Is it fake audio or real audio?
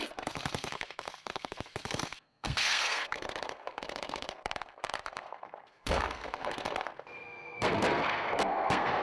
fake